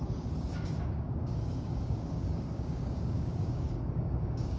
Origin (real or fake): fake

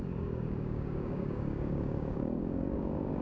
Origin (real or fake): fake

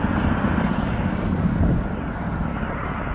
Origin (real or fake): real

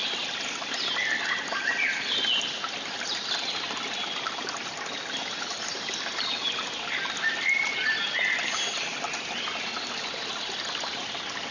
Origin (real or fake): real